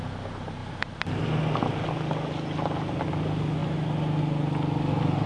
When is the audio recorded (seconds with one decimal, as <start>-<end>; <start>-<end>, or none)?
0.0-5.3